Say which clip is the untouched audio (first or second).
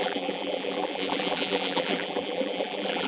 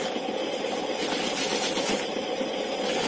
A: second